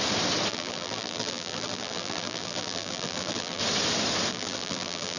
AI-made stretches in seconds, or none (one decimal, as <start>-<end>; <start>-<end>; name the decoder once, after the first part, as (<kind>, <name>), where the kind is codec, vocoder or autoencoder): 0.5-3.6 (vocoder, BigVGAN v2); 4.3-5.2